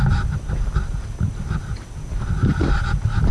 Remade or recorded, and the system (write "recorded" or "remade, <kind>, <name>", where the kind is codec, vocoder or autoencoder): recorded